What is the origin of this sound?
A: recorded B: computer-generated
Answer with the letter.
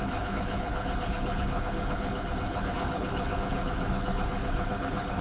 B